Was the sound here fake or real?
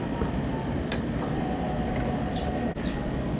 real